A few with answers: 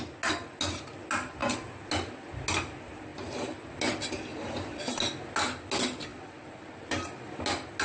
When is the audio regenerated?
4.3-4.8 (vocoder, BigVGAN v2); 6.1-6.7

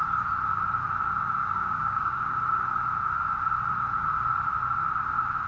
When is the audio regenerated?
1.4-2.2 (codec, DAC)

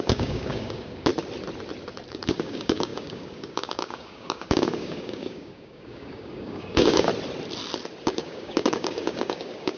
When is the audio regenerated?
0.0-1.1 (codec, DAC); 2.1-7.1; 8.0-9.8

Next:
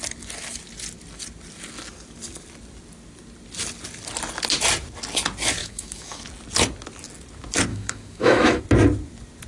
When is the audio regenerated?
5.6-6.2 (autoencoder, DAC-VAE); 7.7-8.6